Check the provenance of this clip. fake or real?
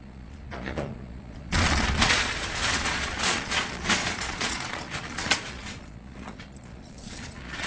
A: fake